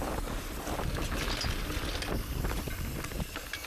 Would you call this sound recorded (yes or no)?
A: yes